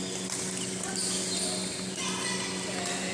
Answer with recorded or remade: recorded